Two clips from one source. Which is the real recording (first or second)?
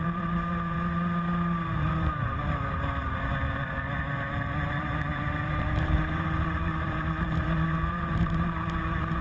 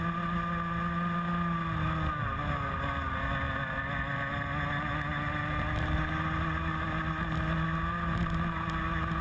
second